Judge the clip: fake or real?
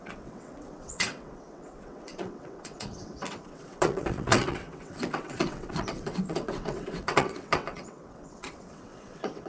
fake